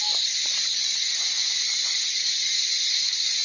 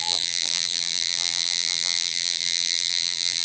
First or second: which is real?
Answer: first